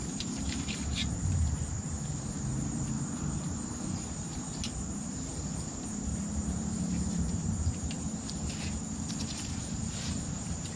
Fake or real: fake